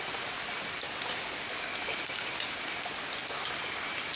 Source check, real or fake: real